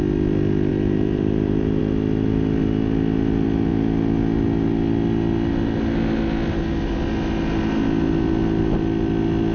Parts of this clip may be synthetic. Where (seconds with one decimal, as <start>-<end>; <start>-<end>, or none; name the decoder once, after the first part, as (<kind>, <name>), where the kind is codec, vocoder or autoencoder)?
0.7-1.8 (vocoder, BigVGAN v2)